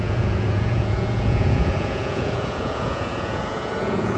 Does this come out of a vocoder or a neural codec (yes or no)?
yes